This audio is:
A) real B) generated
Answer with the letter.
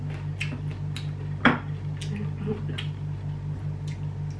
A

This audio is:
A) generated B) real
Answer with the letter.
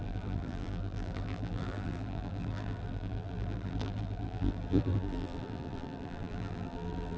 A